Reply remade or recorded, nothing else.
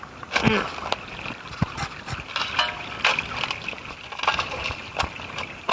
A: recorded